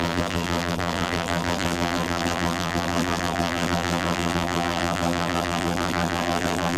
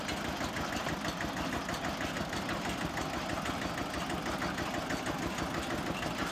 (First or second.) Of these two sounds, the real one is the second